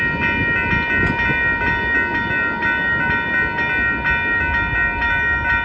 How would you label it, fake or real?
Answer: real